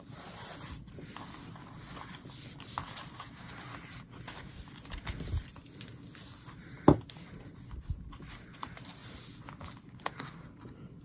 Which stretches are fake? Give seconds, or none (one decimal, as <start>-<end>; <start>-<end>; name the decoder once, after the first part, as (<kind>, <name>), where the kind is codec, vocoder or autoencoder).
none